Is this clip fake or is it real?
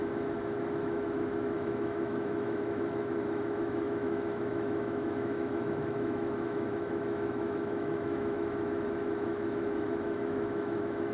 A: fake